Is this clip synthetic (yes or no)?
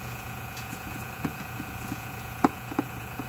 yes